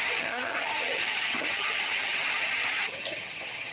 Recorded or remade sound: remade